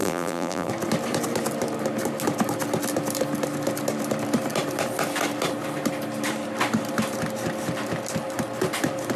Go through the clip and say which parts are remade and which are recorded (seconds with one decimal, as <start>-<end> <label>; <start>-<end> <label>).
0.0-0.7 remade; 0.7-9.2 recorded